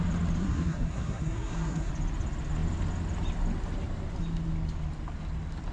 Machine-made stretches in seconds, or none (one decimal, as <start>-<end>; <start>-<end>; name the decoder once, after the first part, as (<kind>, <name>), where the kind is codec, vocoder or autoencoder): 0.4-1.9 (codec, SNAC)